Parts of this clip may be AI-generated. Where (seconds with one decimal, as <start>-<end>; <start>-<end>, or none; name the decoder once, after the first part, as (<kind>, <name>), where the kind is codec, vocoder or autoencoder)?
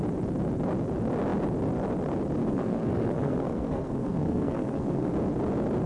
2.5-5.1 (codec, SNAC)